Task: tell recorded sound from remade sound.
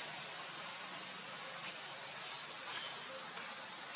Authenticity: recorded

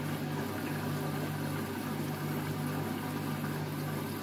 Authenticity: recorded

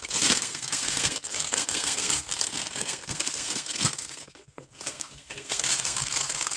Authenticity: remade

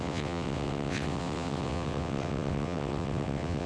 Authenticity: remade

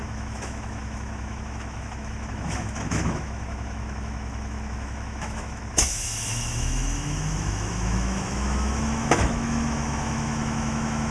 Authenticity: remade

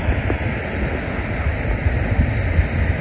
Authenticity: recorded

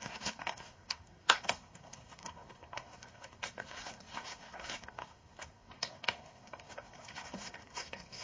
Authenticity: remade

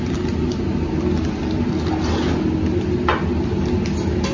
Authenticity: recorded